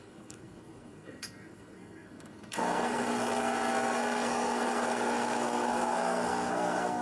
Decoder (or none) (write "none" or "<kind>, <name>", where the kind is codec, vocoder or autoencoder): codec, SNAC